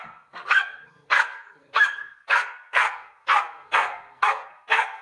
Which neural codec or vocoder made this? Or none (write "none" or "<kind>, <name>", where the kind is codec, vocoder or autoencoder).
codec, SNAC